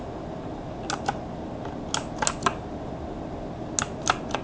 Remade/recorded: recorded